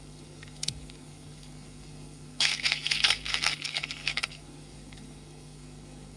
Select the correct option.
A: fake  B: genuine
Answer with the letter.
A